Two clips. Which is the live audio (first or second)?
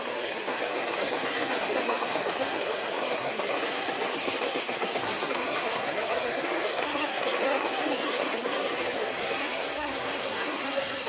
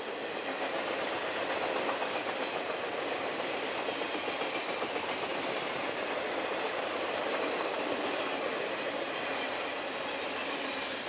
second